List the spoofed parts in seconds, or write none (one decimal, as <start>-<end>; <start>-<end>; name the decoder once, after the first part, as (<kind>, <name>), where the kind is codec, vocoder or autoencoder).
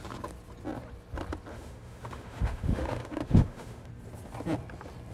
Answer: 1.5-3.9 (autoencoder, DAC-VAE)